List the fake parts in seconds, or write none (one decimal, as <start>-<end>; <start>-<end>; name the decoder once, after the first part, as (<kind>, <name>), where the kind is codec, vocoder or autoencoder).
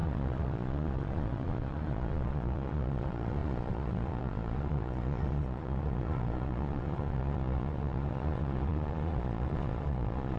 0.0-10.4 (vocoder, Vocos)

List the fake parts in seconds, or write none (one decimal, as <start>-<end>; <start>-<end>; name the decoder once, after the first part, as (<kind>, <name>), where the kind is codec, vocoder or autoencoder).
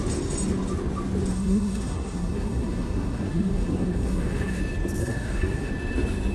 1.3-4.6 (codec, SNAC); 5.0-5.7